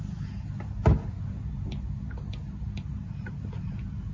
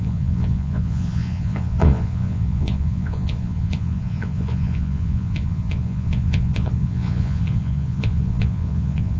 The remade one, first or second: second